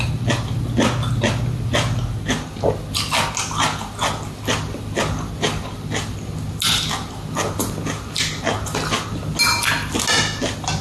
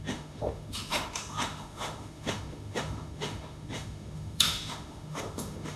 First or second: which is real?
first